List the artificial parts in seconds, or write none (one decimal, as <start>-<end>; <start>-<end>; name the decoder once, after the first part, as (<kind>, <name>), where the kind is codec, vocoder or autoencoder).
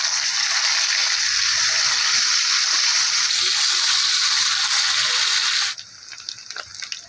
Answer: none